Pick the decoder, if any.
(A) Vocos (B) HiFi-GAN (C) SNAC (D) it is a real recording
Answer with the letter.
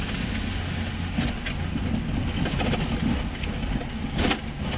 D